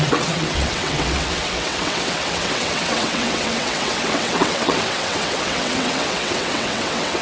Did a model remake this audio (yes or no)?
yes